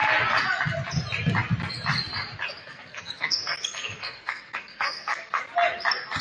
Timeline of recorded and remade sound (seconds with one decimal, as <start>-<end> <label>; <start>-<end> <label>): 0.0-2.6 recorded; 2.6-5.4 remade; 5.4-6.2 recorded